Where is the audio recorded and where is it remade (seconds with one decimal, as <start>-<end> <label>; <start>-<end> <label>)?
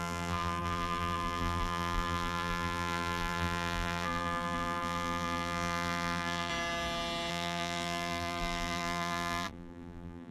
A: 0.0-6.5 remade; 6.5-7.3 recorded; 7.3-10.3 remade